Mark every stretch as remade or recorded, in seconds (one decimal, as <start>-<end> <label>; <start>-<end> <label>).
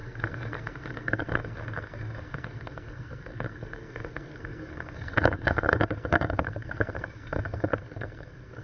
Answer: 0.0-8.6 remade